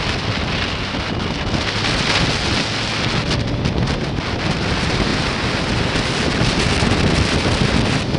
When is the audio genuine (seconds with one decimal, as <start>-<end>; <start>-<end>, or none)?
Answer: 0.0-8.2